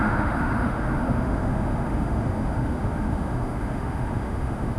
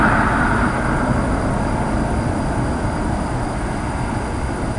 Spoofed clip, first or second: first